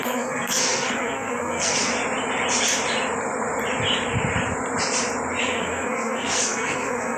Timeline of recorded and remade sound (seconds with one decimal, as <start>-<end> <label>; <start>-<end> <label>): 0.0-1.9 remade; 1.9-5.4 recorded; 5.4-7.2 remade